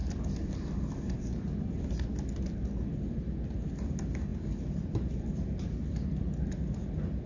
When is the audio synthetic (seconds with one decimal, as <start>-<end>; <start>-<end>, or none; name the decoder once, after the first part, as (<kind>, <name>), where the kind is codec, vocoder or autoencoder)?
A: none